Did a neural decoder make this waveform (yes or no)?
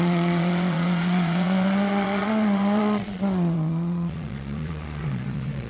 yes